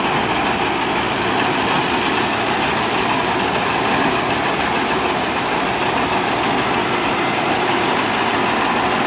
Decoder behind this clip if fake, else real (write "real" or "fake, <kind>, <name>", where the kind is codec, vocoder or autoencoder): real